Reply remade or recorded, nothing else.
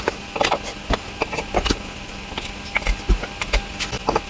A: recorded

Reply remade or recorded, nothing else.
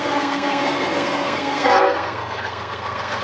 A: remade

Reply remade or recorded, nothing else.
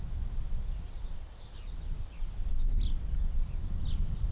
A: recorded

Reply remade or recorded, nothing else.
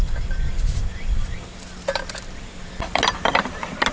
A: recorded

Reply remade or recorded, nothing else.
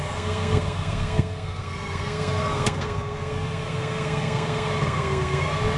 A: remade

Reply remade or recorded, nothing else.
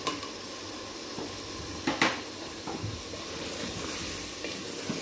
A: recorded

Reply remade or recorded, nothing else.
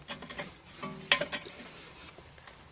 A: recorded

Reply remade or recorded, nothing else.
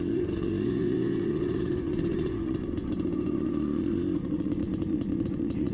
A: remade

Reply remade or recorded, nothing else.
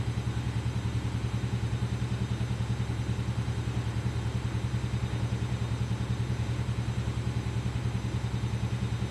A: recorded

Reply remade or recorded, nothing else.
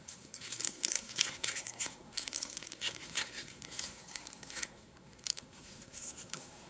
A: remade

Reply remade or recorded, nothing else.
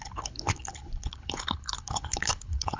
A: remade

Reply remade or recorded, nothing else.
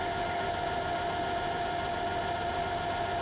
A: recorded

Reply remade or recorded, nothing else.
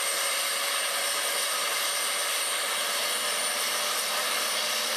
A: recorded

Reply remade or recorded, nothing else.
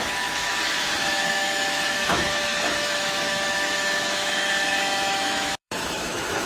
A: remade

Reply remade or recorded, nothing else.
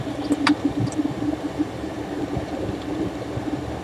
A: remade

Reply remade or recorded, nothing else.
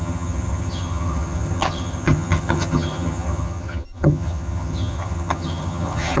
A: remade